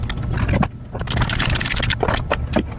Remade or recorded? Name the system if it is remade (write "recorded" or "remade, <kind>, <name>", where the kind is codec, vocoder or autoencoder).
recorded